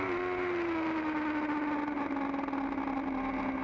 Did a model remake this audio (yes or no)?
no